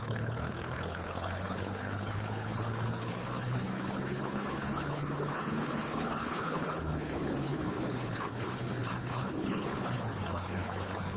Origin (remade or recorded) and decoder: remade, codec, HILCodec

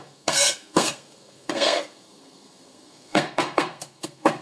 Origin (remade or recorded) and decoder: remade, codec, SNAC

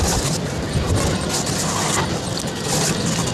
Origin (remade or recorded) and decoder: recorded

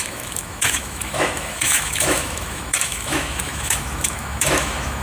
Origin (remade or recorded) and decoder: remade, autoencoder, DAC-VAE